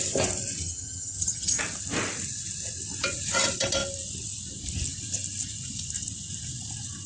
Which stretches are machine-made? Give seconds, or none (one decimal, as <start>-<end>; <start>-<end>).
0.6-1.6

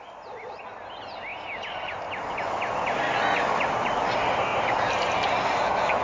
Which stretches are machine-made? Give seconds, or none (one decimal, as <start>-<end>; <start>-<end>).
none

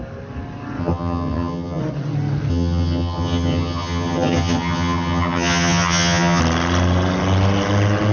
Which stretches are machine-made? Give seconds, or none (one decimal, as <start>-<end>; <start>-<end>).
0.8-1.8; 2.5-6.4

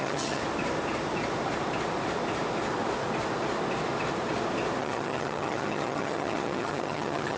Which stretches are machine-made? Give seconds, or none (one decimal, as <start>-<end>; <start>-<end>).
0.0-0.4; 4.8-7.4

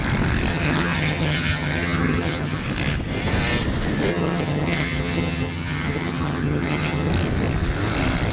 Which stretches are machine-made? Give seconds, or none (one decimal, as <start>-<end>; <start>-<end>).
0.5-2.6; 4.1-7.1

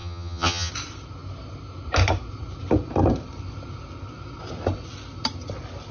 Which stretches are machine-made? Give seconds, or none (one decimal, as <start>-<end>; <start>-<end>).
0.0-0.7